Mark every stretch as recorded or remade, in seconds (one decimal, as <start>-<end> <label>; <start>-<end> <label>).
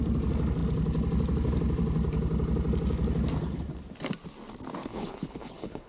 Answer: 0.0-4.9 recorded; 4.9-5.9 remade